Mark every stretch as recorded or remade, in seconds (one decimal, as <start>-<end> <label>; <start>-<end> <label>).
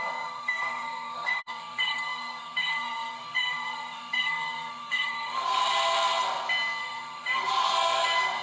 0.0-5.6 remade; 5.6-6.8 recorded; 6.8-8.4 remade